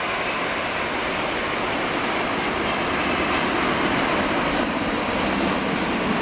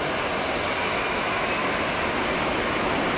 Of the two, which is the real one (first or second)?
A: second